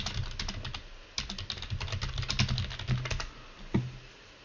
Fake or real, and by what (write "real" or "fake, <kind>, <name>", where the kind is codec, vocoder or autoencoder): real